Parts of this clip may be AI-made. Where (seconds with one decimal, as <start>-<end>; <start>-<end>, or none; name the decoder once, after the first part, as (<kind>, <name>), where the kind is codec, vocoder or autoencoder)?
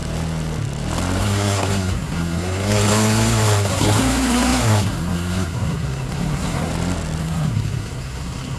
1.2-6.7 (codec, SNAC); 7.2-8.6